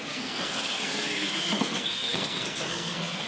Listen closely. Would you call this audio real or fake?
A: fake